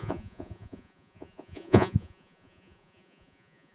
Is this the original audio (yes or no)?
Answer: no